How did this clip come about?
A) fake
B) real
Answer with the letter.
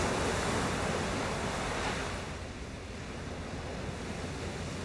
B